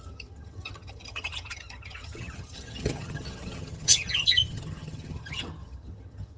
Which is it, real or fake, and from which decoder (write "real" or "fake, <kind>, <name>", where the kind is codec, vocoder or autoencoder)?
fake, vocoder, HiFi-GAN